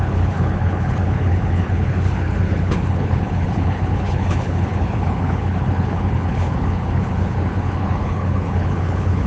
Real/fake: fake